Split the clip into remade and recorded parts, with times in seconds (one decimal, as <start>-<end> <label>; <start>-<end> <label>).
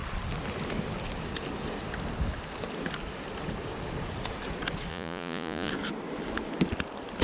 0.0-4.9 recorded; 4.9-5.7 remade; 5.7-7.2 recorded